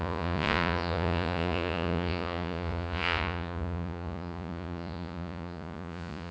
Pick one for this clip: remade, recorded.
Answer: remade